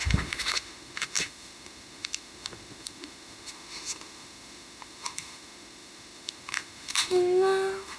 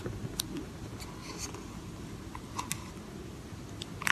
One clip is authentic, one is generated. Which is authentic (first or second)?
second